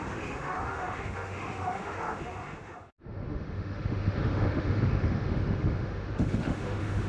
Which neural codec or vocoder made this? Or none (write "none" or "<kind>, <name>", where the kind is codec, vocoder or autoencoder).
autoencoder, DAC-VAE